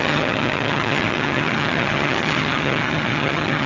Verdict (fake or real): fake